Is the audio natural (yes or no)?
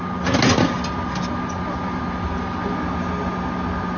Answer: yes